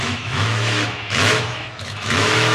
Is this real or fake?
fake